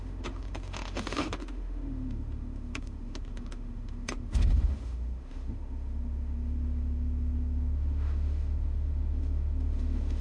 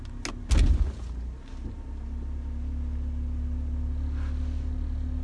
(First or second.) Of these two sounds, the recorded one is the second